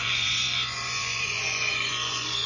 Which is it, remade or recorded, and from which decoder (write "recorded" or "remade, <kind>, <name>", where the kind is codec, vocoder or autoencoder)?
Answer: remade, vocoder, Vocos